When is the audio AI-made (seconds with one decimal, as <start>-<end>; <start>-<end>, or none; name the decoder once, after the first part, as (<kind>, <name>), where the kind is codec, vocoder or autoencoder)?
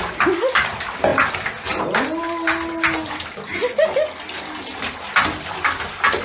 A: none